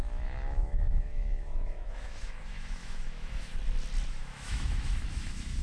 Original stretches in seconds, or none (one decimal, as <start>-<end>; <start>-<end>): 3.5-4.1